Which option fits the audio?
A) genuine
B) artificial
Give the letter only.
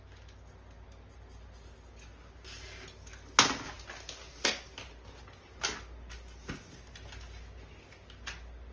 A